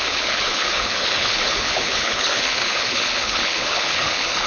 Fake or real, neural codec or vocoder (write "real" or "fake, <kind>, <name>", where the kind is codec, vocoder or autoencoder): fake, codec, HILCodec